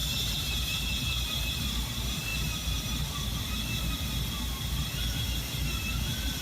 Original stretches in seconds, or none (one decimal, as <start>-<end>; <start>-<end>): 1.4-6.4